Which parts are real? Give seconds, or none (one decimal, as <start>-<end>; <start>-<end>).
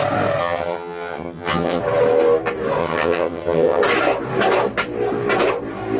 0.0-0.4; 1.8-2.8; 3.8-6.0